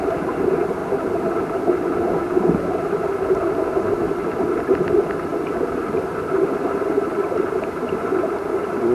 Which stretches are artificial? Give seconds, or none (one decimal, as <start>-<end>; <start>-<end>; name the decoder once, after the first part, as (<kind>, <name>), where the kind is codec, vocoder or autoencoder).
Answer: 0.0-0.8 (vocoder, BigVGAN v2); 3.8-5.3; 5.8-8.9